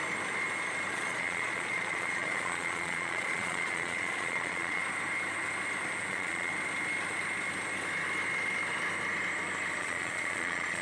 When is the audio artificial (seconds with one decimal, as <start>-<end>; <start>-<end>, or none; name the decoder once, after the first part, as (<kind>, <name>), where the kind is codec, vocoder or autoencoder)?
0.9-4.8 (vocoder, Vocos); 6.1-6.5; 9.8-10.8